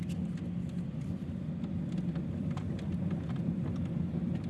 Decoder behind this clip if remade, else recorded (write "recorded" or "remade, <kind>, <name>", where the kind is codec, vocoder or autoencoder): recorded